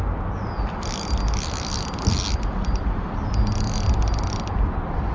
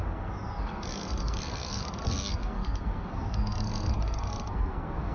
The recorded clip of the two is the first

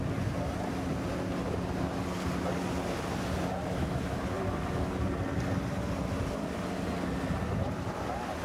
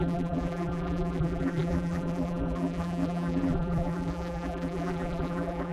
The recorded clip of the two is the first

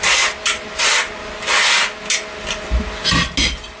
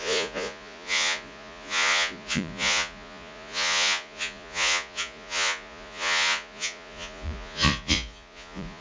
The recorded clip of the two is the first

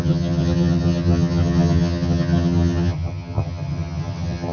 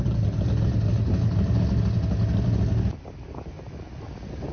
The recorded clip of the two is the second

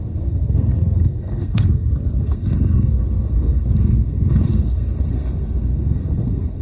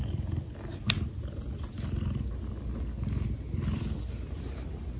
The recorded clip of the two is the second